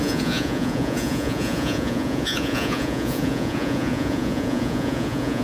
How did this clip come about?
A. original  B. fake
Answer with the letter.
B